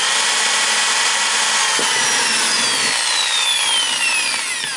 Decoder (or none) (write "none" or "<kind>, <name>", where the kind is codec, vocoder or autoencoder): none